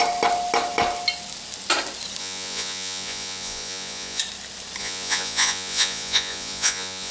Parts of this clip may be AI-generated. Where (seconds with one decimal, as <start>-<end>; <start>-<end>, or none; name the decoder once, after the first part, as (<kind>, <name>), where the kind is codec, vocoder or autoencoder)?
2.2-4.2 (vocoder, Vocos); 4.8-7.1